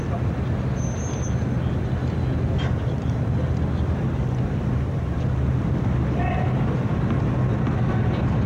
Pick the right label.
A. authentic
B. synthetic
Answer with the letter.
A